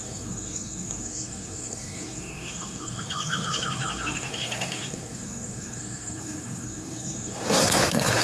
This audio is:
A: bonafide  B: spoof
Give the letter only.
B